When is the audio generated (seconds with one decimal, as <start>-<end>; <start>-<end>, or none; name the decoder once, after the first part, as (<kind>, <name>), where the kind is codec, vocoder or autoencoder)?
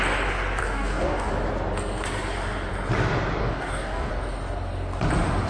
0.6-1.3 (codec, DAC); 3.4-4.1